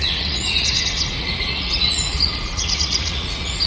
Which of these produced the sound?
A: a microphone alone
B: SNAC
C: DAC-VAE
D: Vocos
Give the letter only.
D